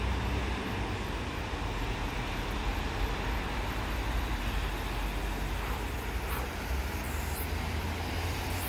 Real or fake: real